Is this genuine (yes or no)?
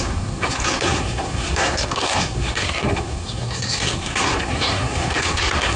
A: no